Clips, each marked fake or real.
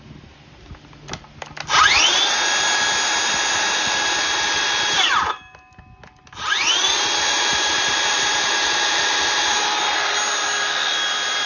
real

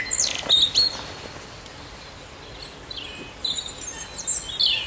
real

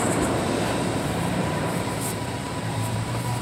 fake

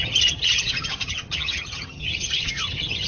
fake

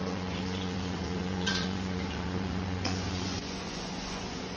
fake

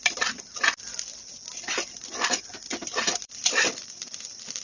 fake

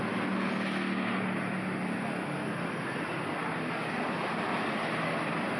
real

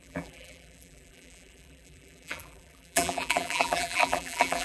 fake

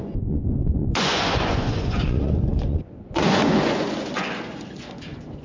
fake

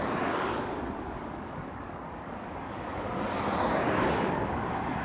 fake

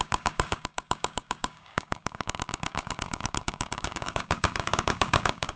fake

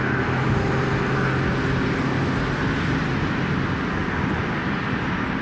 real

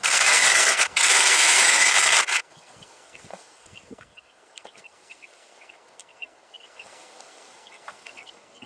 fake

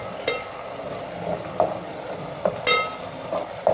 real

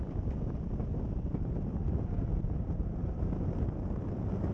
real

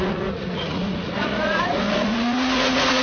fake